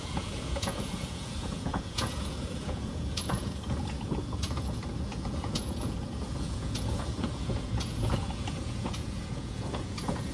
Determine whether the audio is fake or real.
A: fake